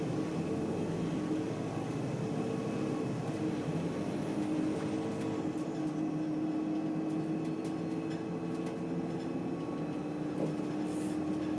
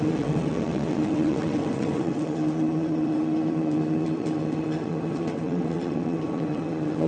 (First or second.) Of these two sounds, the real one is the first